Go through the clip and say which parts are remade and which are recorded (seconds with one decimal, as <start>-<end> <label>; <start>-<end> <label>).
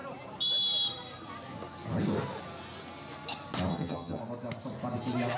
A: 0.0-3.7 recorded; 3.7-4.2 remade; 4.2-5.4 recorded